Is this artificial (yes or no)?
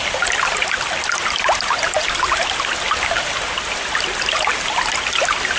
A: no